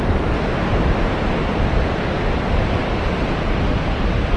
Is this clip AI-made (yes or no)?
no